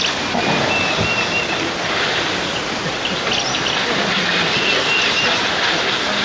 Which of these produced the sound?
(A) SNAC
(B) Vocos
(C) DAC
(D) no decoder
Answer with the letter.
D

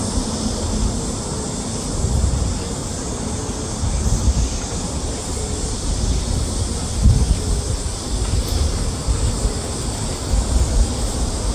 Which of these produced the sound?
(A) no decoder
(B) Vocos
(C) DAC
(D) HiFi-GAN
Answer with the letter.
A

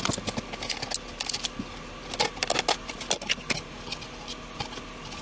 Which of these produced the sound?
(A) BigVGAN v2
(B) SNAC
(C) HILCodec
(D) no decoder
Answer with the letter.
D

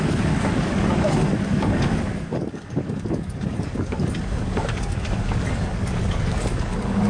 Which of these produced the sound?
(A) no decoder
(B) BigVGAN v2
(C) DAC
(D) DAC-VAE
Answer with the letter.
C